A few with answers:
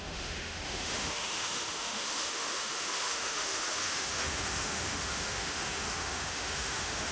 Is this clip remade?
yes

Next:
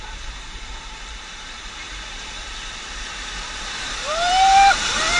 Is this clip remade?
yes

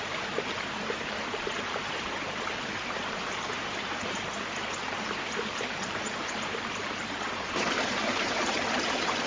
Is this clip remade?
yes